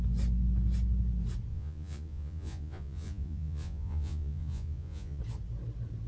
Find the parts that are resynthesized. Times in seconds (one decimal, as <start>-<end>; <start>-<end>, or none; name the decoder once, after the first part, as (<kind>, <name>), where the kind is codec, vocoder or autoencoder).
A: 1.5-5.2 (vocoder, Vocos)